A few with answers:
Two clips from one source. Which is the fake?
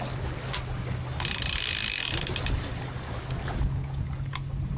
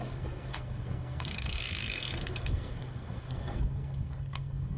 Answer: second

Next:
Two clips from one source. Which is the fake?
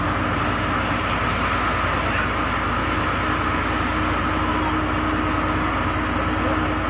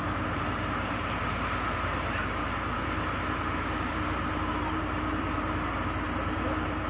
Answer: second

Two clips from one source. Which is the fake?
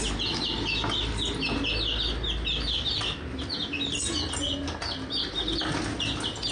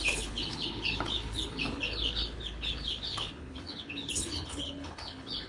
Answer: second